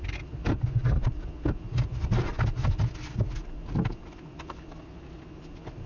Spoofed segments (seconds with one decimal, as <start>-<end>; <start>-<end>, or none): none